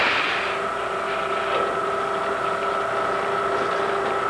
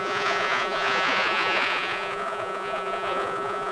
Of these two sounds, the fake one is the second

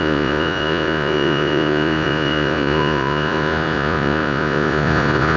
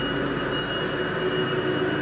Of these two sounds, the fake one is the first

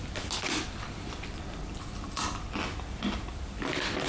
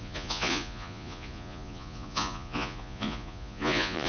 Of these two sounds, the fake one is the second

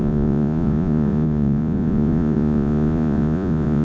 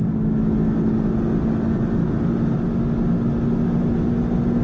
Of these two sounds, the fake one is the first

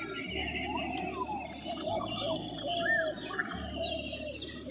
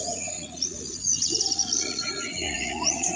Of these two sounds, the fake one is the second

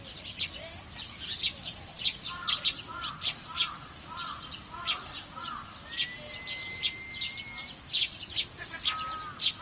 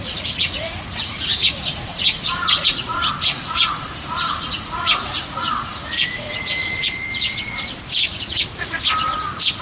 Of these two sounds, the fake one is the second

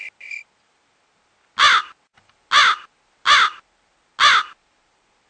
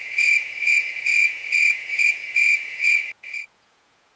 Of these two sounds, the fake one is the second